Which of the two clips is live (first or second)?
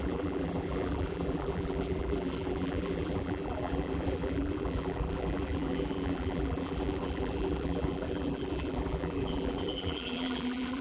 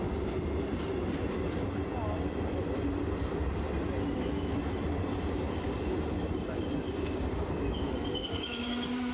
second